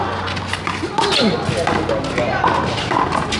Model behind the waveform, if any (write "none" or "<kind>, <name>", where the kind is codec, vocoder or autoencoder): none